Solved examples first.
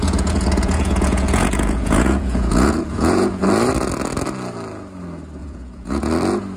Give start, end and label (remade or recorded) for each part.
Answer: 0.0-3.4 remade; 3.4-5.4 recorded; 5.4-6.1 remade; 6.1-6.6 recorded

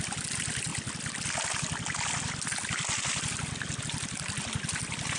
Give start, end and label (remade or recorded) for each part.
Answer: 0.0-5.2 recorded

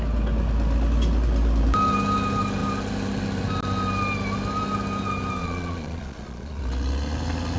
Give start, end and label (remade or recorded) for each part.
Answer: 0.0-5.4 recorded; 5.4-6.6 remade; 6.6-7.6 recorded